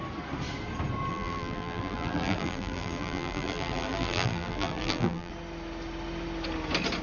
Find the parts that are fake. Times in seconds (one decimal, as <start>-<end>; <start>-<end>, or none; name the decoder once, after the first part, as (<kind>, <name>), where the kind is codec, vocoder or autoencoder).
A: 1.1-5.3 (vocoder, BigVGAN v2)